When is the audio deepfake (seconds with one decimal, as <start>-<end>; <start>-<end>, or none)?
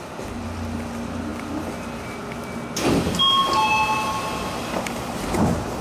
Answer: none